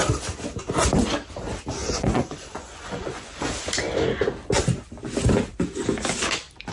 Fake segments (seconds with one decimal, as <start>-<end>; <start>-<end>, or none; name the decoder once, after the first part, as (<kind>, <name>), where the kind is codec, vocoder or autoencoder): 1.8-3.5 (vocoder, Vocos)